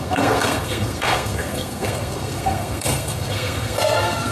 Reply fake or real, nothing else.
fake